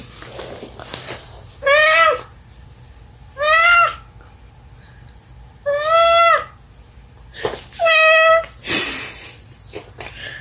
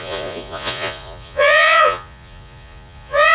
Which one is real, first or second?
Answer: first